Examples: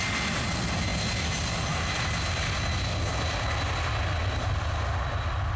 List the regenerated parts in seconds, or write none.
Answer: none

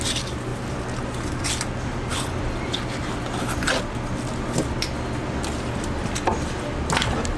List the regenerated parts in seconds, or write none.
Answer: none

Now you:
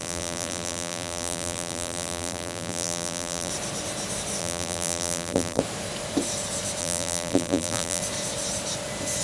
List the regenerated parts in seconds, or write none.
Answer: 0.0-3.5 (vocoder, BigVGAN v2); 4.4-5.6; 6.8-8.0

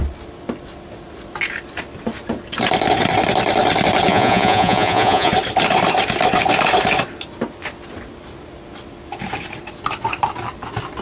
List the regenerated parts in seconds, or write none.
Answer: 4.1-5.3 (vocoder, Vocos)

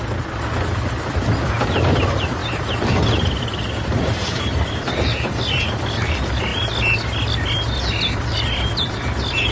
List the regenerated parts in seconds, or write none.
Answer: 0.0-6.5 (vocoder, BigVGAN v2); 7.5-9.5